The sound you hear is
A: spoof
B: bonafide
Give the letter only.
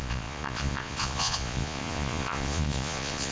A